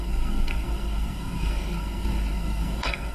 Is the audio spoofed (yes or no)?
yes